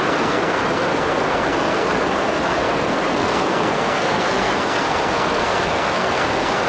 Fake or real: fake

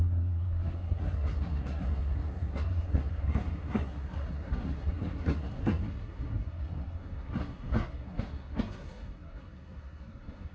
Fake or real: fake